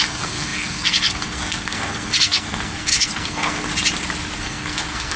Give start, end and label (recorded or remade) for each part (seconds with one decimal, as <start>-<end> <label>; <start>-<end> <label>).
0.0-3.7 remade; 3.7-4.4 recorded; 4.4-5.2 remade